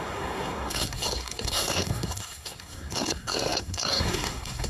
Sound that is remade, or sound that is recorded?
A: remade